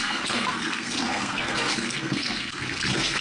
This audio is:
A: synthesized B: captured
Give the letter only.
A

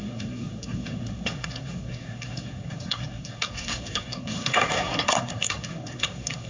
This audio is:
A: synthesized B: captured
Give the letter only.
A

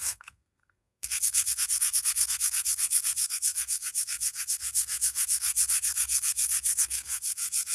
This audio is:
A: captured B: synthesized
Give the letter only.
B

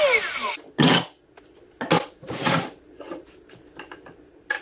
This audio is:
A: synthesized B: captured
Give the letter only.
B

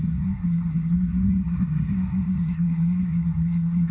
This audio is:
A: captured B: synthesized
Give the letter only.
B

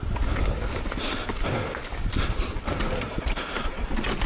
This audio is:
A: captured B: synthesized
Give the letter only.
A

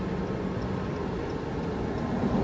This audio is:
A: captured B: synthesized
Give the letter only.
A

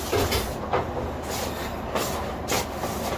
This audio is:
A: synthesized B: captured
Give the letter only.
B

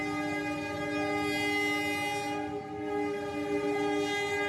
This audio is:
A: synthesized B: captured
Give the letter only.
B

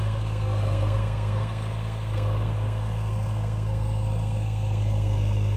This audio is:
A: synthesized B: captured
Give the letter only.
A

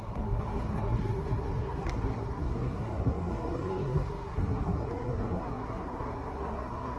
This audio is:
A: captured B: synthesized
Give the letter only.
B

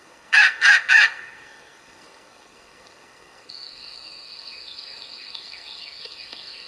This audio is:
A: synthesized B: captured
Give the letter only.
A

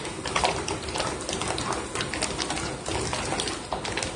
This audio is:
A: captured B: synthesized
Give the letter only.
A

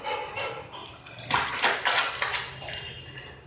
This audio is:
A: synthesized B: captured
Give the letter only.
B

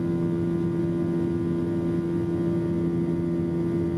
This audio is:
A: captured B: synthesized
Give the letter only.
A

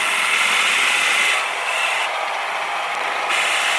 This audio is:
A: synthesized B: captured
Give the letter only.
B